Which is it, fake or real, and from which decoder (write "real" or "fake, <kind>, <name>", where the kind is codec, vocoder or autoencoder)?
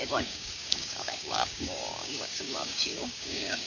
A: fake, codec, DAC